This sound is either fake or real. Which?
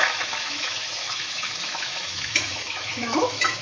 fake